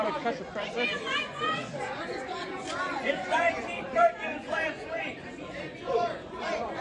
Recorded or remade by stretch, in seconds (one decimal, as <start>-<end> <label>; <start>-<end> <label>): 0.0-6.8 remade